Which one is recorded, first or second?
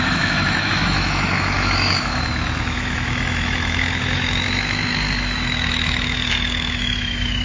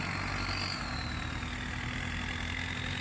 second